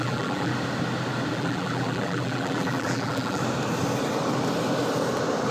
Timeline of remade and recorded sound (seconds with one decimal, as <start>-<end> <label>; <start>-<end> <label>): 0.0-0.5 remade; 0.5-1.3 recorded; 1.3-3.4 remade; 3.4-5.5 recorded